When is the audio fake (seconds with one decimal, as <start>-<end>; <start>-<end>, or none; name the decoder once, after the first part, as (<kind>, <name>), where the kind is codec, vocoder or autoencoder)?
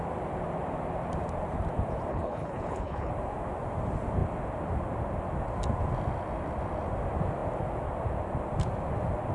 2.1-3.1 (codec, HILCodec)